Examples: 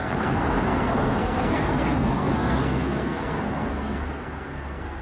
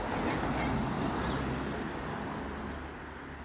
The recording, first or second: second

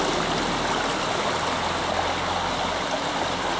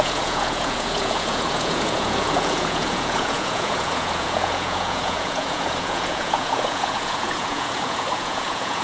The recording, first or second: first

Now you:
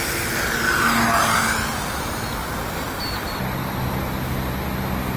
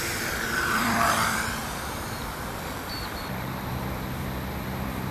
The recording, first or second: first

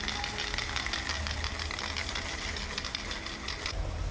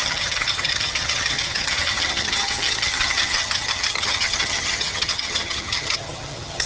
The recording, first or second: first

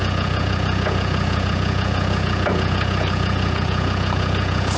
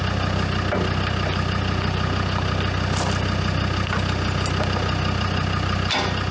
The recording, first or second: second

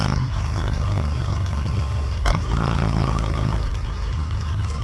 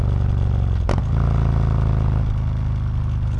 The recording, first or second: second